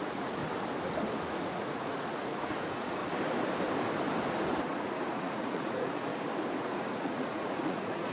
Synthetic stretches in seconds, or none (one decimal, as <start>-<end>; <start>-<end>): 0.0-0.4; 1.2-3.0; 4.7-6.1; 6.6-8.1